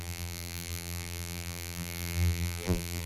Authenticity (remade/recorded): remade